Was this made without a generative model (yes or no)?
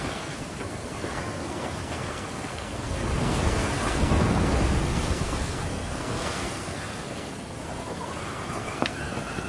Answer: no